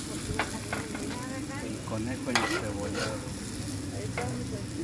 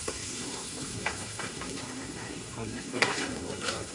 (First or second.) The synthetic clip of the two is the second